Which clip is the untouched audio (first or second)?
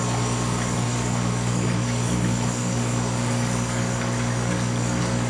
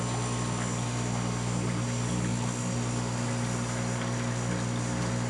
second